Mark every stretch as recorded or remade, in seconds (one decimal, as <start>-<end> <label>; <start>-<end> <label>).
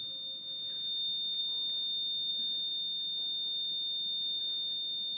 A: 0.0-5.2 recorded